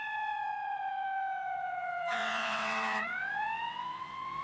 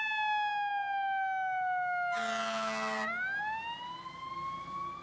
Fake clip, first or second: first